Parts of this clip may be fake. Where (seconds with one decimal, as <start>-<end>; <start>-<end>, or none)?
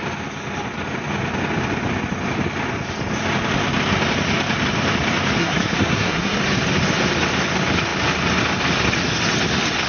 5.4-6.4